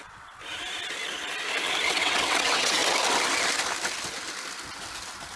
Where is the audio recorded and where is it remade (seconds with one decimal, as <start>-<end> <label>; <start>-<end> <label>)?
0.0-0.4 remade; 0.4-1.9 recorded; 1.9-2.8 remade; 2.8-5.4 recorded